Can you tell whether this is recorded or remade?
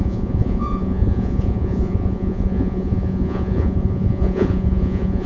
remade